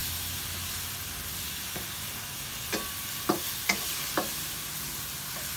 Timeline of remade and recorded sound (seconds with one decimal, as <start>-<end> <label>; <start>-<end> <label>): 0.0-3.1 recorded; 3.1-5.6 remade